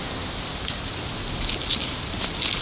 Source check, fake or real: real